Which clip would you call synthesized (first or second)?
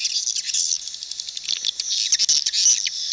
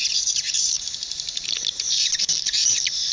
second